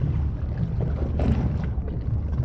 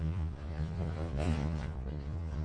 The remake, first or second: second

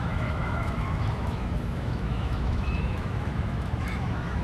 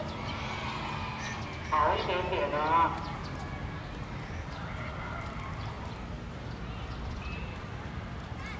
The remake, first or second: first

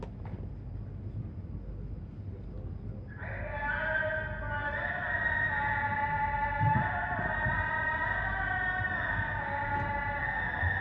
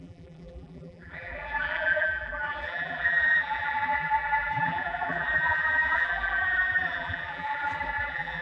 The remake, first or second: second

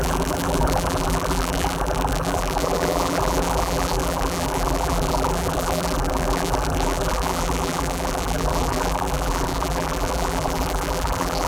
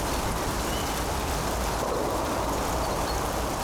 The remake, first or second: first